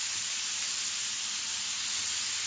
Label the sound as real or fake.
real